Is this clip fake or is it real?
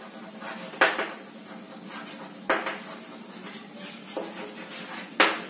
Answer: real